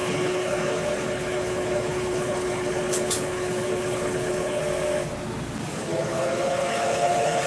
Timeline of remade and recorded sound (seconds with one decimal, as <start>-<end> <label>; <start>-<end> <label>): 0.0-4.6 remade; 4.6-5.8 recorded; 5.8-7.5 remade